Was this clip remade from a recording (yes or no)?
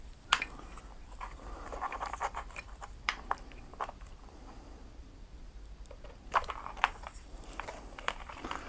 yes